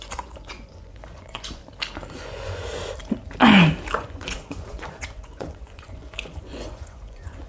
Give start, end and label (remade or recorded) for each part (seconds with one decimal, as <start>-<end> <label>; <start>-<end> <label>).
0.0-1.6 remade; 1.6-2.1 recorded; 2.1-2.7 remade; 2.7-4.0 recorded; 4.0-7.5 remade